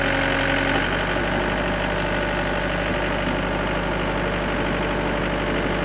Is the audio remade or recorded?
recorded